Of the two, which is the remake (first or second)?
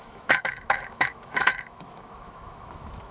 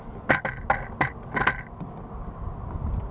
first